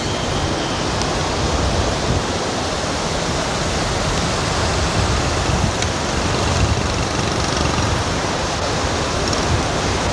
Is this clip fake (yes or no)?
no